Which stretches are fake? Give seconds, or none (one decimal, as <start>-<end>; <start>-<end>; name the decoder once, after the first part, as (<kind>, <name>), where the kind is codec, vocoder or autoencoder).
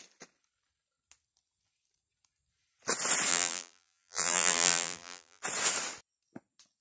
3.3-5.4 (vocoder, BigVGAN v2)